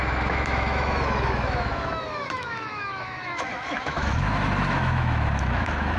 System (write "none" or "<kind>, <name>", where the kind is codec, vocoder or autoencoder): autoencoder, DAC-VAE